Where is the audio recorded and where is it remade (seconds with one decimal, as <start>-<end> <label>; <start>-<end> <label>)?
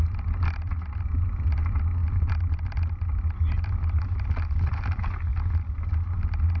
0.0-6.6 recorded